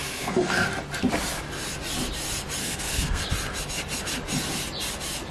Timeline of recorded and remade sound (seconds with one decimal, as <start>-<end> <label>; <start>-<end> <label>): 0.0-0.7 remade; 0.7-2.6 recorded; 2.6-3.2 remade; 3.2-5.3 recorded